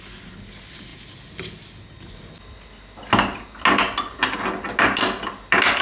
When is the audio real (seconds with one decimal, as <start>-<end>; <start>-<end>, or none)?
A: 0.0-5.8